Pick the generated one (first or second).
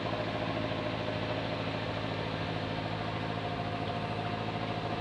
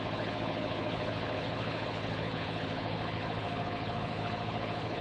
second